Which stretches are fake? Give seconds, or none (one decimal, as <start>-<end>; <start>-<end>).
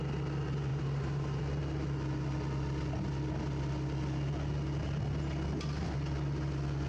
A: 0.7-1.4